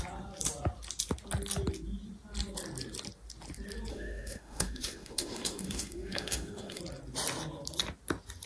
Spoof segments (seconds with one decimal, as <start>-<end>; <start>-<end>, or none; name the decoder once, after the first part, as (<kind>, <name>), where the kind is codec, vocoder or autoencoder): 3.9-6.8 (autoencoder, DAC-VAE)